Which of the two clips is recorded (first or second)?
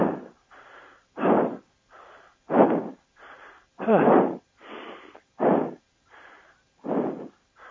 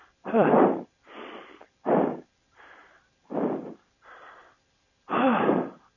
first